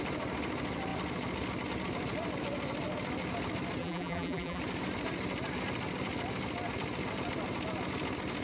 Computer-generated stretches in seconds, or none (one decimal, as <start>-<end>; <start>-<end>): 3.8-4.6